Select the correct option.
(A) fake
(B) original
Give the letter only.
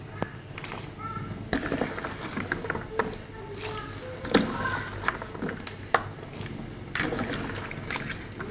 B